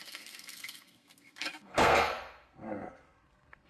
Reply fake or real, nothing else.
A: fake